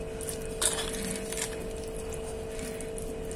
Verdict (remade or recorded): recorded